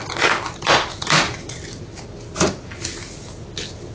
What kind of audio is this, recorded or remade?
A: recorded